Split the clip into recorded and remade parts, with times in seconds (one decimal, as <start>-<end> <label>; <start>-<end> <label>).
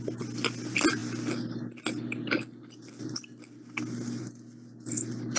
0.0-5.4 recorded